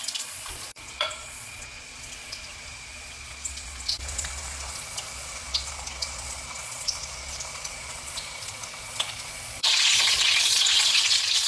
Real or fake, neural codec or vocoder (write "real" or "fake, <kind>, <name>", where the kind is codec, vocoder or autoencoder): fake, vocoder, Vocos